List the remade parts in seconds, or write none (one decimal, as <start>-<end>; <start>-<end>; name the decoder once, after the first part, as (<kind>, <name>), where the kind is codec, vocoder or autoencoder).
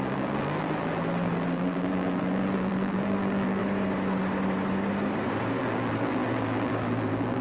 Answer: 0.0-3.6 (vocoder, BigVGAN v2); 5.6-7.4